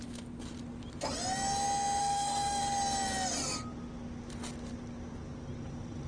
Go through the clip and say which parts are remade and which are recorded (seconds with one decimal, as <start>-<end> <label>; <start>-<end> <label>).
0.0-2.0 recorded; 2.0-2.6 remade; 2.6-6.1 recorded

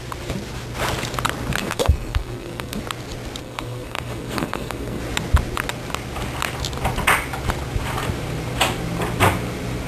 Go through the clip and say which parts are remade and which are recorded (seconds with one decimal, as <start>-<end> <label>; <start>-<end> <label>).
0.0-1.6 recorded; 1.6-2.8 remade; 2.8-3.4 recorded; 3.4-5.0 remade; 5.0-9.9 recorded

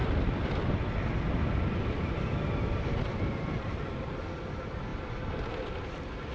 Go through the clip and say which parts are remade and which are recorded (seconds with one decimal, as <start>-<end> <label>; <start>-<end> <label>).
0.0-6.3 recorded

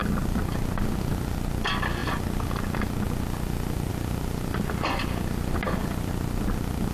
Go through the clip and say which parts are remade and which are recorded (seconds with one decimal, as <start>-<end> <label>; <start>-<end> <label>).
0.0-6.9 recorded

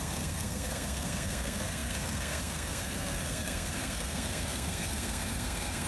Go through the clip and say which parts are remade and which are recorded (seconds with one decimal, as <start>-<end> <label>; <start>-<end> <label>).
0.0-5.9 remade

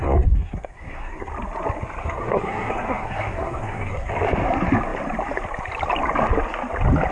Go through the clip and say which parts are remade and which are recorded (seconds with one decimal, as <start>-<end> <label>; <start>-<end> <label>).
0.0-1.3 remade; 1.3-2.0 recorded; 2.0-4.1 remade; 4.1-7.1 recorded